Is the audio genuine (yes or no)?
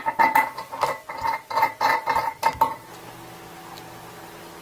yes